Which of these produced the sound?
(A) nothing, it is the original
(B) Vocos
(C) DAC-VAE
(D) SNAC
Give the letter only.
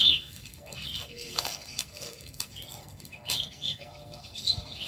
D